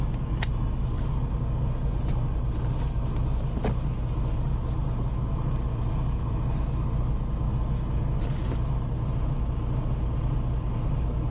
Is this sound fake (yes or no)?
no